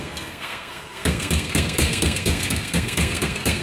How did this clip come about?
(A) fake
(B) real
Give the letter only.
A